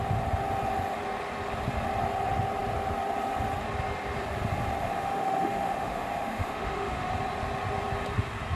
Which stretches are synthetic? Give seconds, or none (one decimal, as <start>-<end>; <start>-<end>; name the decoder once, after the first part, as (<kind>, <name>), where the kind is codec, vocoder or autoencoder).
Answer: 4.8-7.1 (autoencoder, DAC-VAE)